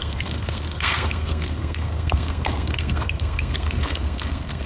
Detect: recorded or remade remade